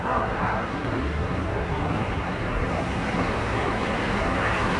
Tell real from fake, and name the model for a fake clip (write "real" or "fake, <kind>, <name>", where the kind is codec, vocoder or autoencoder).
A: fake, codec, SNAC